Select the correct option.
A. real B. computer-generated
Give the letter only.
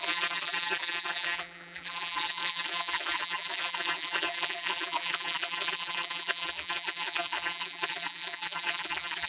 B